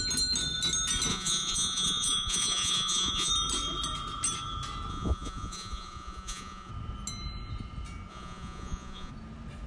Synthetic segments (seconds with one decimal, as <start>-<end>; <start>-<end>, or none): 1.1-3.3; 4.9-6.7; 8.1-9.1